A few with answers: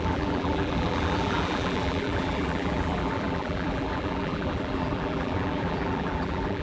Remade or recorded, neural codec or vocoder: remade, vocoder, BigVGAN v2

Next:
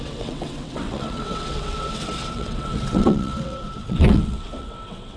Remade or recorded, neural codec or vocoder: remade, vocoder, WaveNeXt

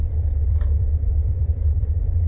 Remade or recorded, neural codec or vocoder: remade, vocoder, BigVGAN v2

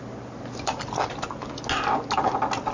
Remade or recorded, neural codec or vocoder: recorded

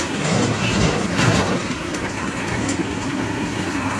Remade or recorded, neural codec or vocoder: remade, codec, SNAC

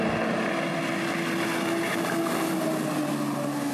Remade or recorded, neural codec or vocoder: recorded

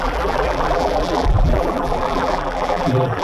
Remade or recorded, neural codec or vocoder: remade, vocoder, BigVGAN v2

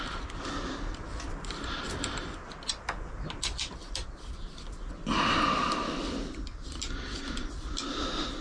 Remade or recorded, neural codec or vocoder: recorded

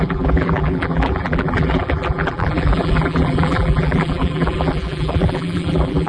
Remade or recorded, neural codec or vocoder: remade, vocoder, BigVGAN v2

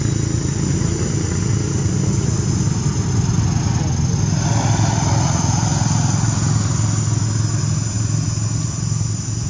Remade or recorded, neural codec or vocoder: recorded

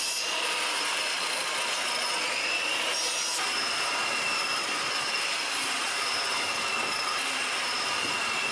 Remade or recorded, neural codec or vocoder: recorded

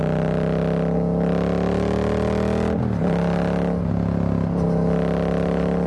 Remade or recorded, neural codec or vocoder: recorded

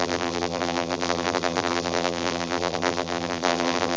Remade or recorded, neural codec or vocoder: remade, vocoder, BigVGAN v2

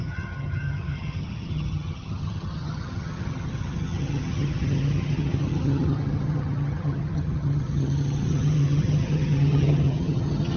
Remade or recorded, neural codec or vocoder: remade, vocoder, HiFi-GAN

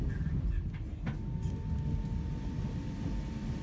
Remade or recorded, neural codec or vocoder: recorded